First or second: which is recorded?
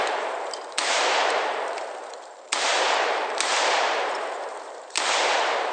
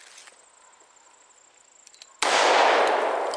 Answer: second